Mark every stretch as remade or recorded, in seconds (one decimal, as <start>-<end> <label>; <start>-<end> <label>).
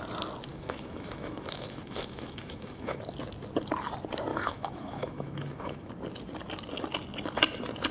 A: 0.0-0.5 recorded; 0.5-3.0 remade; 3.0-4.3 recorded; 4.3-5.9 remade; 5.9-7.9 recorded